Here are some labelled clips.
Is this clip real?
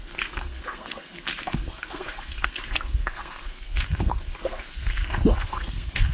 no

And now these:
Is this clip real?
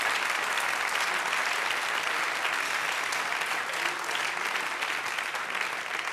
yes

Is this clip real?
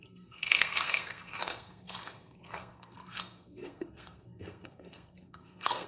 no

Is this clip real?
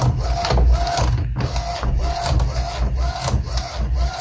yes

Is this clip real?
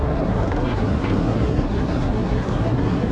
no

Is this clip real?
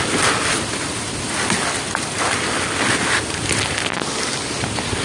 yes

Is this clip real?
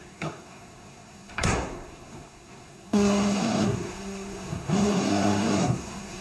no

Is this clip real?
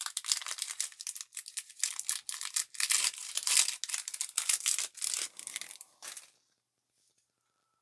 yes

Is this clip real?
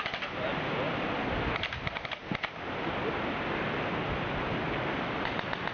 yes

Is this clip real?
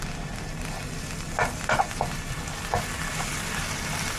yes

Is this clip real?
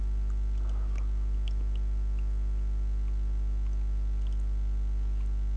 yes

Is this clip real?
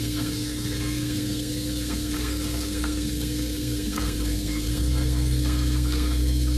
no